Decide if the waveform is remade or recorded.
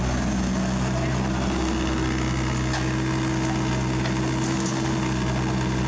recorded